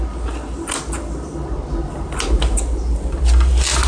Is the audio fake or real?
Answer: real